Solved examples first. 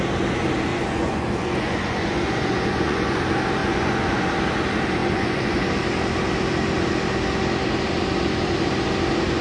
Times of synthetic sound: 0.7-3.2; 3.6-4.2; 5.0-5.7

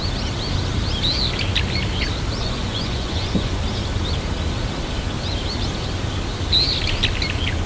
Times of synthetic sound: 2.4-3.6

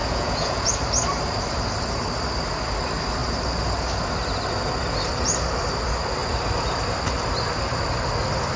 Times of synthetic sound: 0.0-0.7

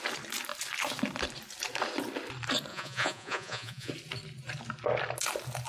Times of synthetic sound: 2.7-3.9